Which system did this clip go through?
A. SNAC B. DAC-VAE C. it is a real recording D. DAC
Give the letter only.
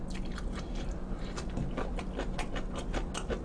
C